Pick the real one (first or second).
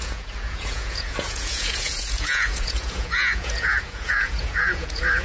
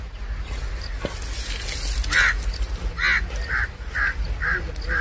second